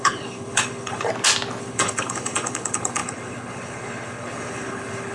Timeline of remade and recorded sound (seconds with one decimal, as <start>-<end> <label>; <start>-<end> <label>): 0.0-1.1 remade; 1.1-1.6 recorded; 1.6-5.1 remade